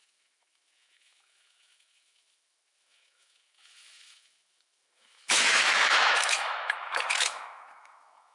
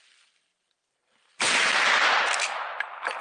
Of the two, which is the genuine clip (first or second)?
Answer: second